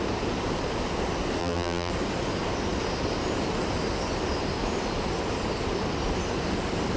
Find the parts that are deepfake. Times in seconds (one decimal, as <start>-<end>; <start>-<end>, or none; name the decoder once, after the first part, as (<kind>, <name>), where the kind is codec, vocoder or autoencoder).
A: 1.4-1.9 (vocoder, BigVGAN v2)